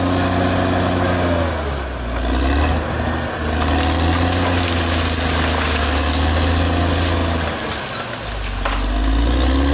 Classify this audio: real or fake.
real